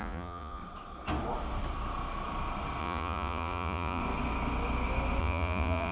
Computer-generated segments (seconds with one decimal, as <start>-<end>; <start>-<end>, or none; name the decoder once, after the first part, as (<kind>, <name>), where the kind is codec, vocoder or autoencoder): 0.0-0.6 (vocoder, Vocos); 2.8-4.0; 5.2-5.9